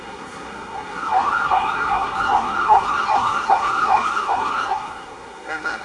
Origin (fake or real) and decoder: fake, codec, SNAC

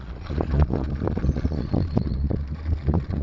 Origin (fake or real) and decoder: fake, vocoder, Vocos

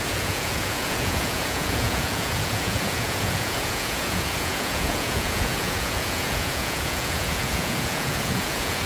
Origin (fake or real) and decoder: fake, vocoder, Vocos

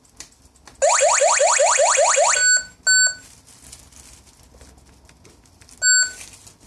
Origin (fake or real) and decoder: real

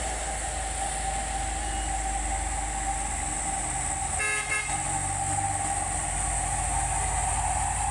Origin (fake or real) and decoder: real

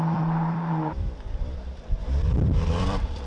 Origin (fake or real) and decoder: fake, vocoder, BigVGAN v2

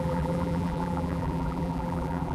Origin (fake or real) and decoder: fake, vocoder, BigVGAN v2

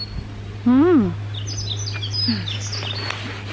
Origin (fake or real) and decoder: real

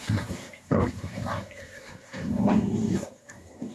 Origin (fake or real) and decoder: fake, codec, SNAC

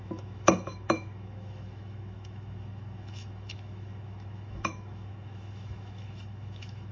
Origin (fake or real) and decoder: fake, autoencoder, DAC-VAE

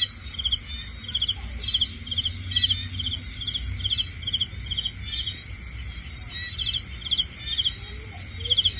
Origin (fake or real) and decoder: real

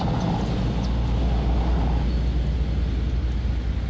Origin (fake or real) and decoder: real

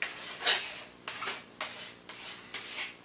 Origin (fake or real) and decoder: real